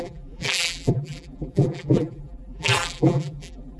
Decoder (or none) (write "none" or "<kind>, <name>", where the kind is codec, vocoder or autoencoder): vocoder, BigVGAN v2